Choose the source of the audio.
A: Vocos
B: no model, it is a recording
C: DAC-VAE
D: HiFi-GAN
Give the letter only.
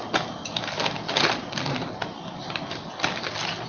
B